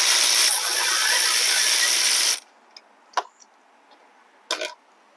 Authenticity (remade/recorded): recorded